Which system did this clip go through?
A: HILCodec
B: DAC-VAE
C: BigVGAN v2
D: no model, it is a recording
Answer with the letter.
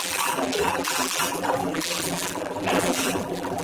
C